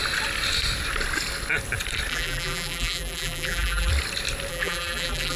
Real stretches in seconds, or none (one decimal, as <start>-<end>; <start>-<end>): 0.0-2.1; 3.9-4.5